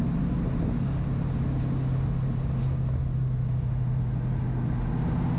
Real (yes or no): yes